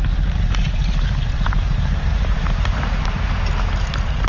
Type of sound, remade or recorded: remade